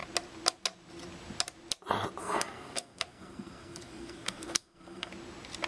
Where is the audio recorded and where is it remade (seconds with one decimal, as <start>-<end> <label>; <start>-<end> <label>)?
0.0-2.2 recorded; 2.2-5.1 remade; 5.1-5.7 recorded

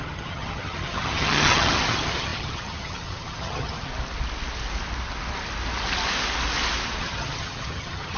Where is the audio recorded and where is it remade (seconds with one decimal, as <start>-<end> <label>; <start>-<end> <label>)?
0.0-3.9 remade; 3.9-7.0 recorded; 7.0-8.2 remade

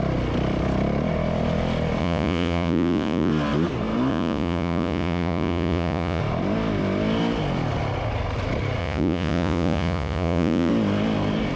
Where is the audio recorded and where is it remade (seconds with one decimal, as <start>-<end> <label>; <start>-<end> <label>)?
0.0-2.0 recorded; 2.0-3.3 remade; 3.3-4.1 recorded; 4.1-6.2 remade; 6.2-8.8 recorded; 8.8-10.7 remade; 10.7-11.6 recorded

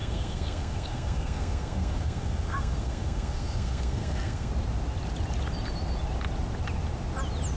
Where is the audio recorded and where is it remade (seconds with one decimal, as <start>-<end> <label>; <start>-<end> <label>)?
0.0-4.5 remade; 4.5-7.6 recorded

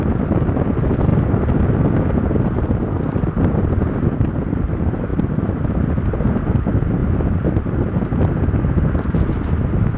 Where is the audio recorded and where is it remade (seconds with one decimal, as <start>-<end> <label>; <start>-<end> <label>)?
0.0-10.0 recorded